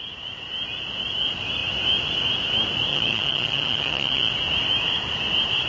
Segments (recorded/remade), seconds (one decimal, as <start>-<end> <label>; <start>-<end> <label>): 0.0-2.9 recorded; 2.9-4.3 remade; 4.3-5.7 recorded